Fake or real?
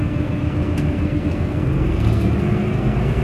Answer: fake